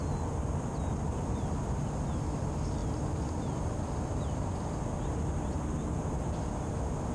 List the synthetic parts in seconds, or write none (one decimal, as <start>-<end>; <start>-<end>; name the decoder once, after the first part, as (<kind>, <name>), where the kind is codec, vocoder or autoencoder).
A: none